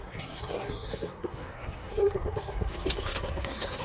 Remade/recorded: remade